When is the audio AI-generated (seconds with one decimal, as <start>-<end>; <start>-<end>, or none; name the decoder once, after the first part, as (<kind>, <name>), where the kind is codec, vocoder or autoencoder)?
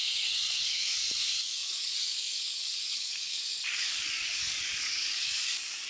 0.0-5.9 (codec, DAC)